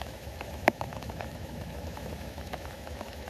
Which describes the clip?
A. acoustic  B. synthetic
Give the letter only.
B